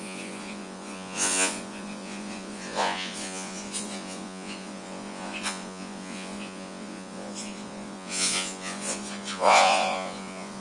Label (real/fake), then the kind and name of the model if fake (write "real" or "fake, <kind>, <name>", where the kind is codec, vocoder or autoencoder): fake, vocoder, Vocos